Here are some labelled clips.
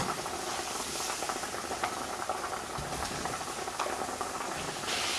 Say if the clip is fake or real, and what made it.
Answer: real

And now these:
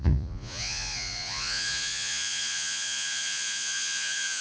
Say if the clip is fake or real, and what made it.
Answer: fake, vocoder, Vocos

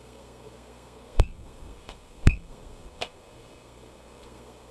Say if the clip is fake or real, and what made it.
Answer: fake, codec, SNAC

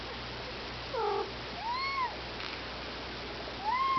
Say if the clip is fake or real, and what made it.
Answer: real